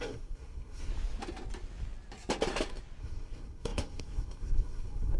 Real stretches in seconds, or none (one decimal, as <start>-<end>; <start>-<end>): 0.9-3.0